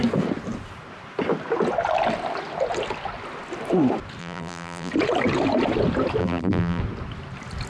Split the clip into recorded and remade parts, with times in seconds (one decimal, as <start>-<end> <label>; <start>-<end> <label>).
0.0-4.2 recorded; 4.2-4.9 remade; 4.9-6.2 recorded; 6.2-6.8 remade; 6.8-7.7 recorded